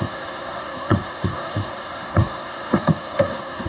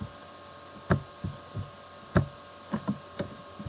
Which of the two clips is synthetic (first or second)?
first